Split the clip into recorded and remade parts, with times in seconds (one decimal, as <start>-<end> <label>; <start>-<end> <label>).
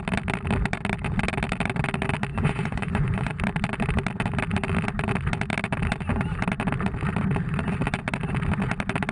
0.0-2.3 recorded; 2.3-3.4 remade; 3.4-9.1 recorded